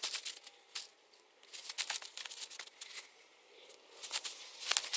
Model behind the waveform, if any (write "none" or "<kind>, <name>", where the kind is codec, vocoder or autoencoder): none